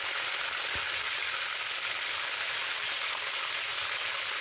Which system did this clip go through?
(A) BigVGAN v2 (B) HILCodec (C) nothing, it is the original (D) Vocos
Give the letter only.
C